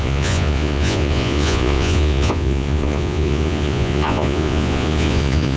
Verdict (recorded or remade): remade